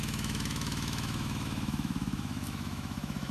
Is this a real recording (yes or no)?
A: no